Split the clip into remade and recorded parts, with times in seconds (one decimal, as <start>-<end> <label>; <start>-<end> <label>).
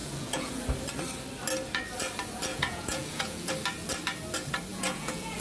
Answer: 0.0-0.6 remade; 0.6-2.5 recorded; 2.5-3.5 remade; 3.5-4.7 recorded; 4.7-5.4 remade